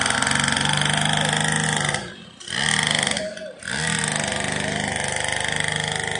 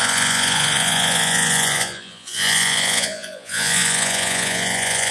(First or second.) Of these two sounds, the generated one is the second